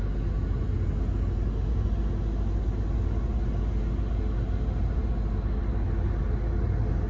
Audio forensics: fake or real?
real